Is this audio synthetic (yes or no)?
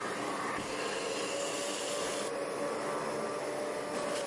no